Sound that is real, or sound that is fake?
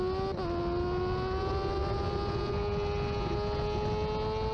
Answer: real